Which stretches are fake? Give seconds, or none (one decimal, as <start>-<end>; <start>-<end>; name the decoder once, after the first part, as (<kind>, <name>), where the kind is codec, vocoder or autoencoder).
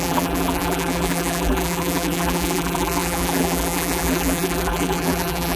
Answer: 0.0-5.6 (vocoder, BigVGAN v2)